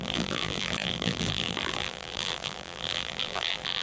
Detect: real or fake fake